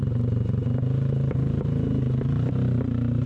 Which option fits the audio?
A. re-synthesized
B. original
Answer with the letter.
B